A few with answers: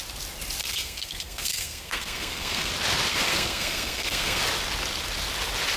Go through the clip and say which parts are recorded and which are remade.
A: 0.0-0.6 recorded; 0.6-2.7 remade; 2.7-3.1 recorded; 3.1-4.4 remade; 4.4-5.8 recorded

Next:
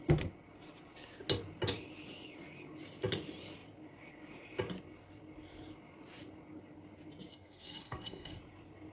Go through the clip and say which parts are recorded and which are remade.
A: 0.0-7.3 recorded; 7.3-8.4 remade; 8.4-8.9 recorded

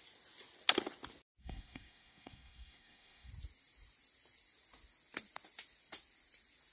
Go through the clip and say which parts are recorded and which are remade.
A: 0.0-1.4 recorded; 1.4-3.3 remade; 3.3-6.7 recorded

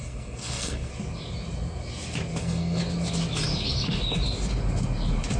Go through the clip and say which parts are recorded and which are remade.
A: 0.0-0.9 remade; 0.9-2.4 recorded; 2.4-2.8 remade; 2.8-5.4 recorded

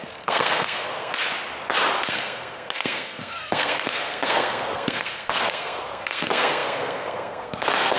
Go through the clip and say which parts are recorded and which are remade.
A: 0.0-1.1 remade; 1.1-2.1 recorded; 2.1-8.0 remade

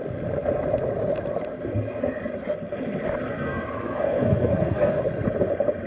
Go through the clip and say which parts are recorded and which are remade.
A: 0.0-3.3 recorded; 3.3-5.0 remade; 5.0-5.9 recorded